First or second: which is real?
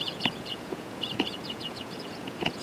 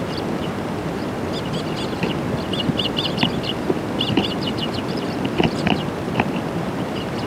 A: second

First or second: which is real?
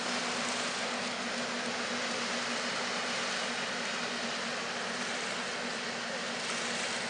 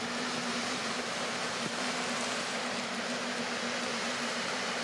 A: first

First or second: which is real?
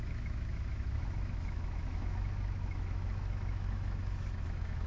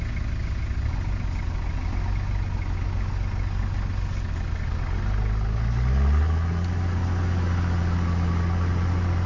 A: second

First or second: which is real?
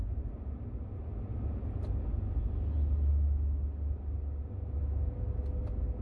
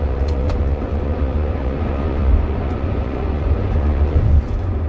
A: first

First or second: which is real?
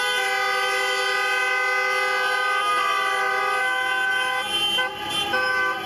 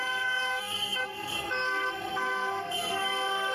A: first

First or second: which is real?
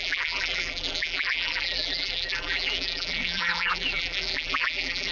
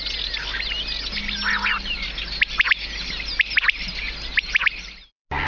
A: second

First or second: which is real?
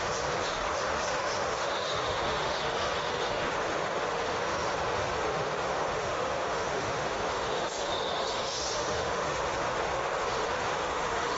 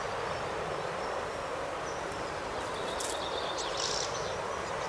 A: second